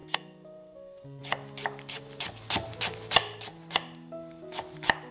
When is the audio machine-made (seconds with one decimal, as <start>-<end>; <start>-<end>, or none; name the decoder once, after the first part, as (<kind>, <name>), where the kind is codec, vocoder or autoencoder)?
0.0-1.2 (codec, SNAC)